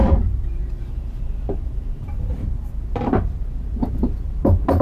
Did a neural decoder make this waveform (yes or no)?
yes